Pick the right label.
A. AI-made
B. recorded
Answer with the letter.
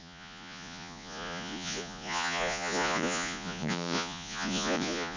A